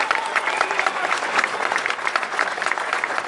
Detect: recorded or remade remade